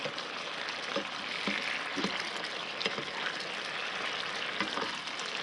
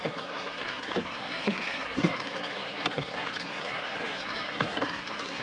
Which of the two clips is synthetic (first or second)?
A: second